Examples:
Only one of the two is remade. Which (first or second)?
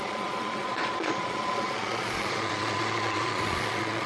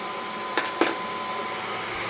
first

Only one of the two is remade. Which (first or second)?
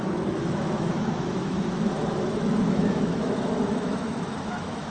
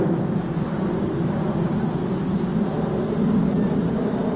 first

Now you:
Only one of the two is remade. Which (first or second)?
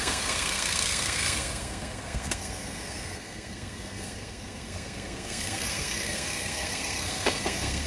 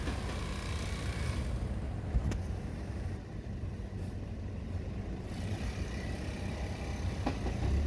first